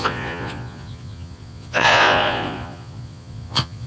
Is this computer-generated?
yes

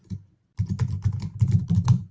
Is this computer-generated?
no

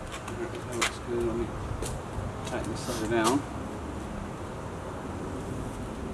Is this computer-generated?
no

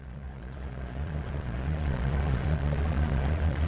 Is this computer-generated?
yes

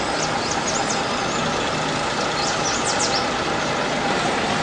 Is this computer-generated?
no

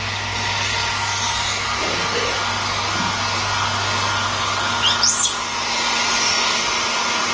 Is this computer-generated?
no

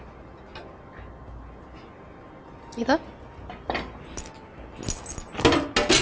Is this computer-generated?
no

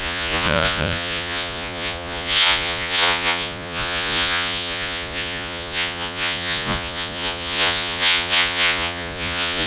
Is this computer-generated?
yes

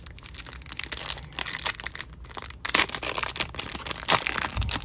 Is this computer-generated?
no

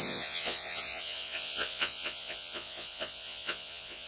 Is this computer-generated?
yes